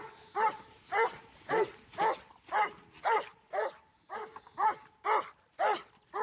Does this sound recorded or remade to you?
recorded